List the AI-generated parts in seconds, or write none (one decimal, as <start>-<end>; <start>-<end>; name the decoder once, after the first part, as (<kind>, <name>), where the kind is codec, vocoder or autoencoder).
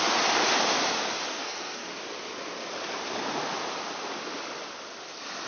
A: 1.3-1.9 (codec, SNAC)